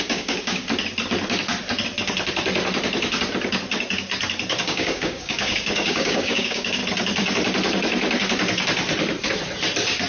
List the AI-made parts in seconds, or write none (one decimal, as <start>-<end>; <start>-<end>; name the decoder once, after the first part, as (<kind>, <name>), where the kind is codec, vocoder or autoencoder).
0.0-0.6 (codec, DAC); 4.6-6.8